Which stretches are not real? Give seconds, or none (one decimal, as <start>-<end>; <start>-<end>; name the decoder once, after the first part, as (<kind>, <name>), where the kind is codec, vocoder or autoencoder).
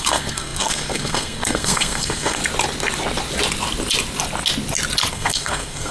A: 0.0-2.4 (codec, SNAC); 5.1-5.9